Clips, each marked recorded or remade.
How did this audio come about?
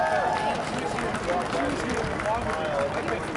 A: recorded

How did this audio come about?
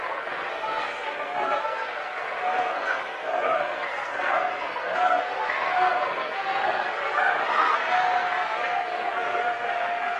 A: remade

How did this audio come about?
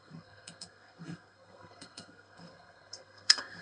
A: remade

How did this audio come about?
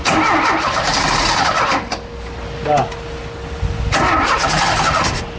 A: recorded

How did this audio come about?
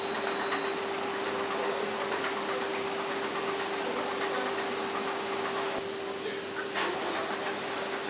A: recorded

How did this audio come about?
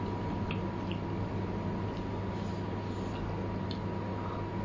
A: recorded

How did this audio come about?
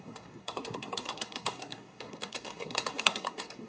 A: remade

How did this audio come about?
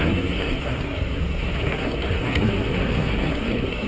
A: remade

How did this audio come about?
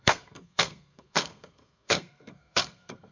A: remade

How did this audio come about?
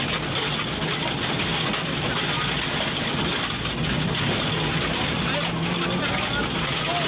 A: recorded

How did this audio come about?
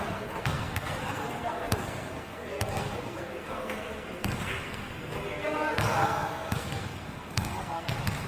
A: remade